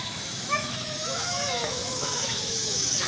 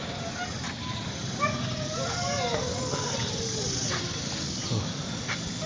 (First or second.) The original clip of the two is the second